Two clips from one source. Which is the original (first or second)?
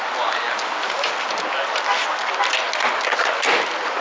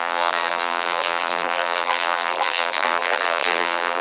first